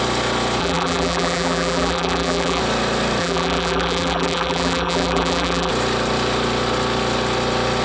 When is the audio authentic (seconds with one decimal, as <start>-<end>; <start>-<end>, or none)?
0.0-0.6; 2.6-3.2; 5.7-7.8